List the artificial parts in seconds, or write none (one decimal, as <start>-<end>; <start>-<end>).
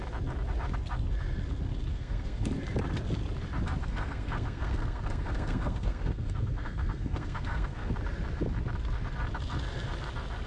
1.9-2.5; 3.8-7.9